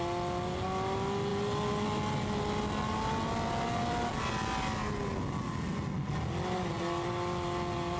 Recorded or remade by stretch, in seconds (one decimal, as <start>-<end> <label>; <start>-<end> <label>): 0.0-8.0 recorded